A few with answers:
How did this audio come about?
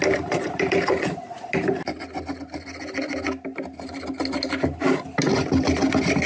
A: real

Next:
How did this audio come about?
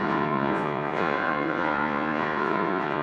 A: fake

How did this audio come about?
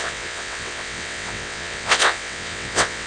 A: fake